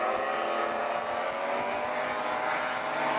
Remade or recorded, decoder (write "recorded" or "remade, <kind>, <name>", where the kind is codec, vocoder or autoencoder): recorded